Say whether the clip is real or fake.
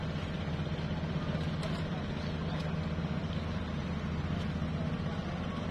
real